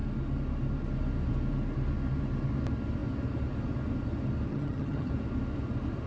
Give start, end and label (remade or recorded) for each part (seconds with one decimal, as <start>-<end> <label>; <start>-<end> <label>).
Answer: 0.0-4.5 recorded; 4.5-5.1 remade; 5.1-6.1 recorded

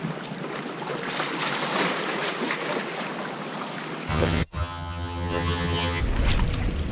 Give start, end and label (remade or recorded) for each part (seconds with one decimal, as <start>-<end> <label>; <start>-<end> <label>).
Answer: 0.0-4.1 recorded; 4.1-6.0 remade; 6.0-6.9 recorded

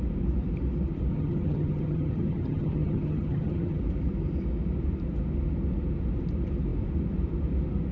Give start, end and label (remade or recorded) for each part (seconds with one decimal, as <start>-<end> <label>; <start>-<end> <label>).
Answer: 0.0-1.1 recorded; 1.1-3.8 remade; 3.8-7.9 recorded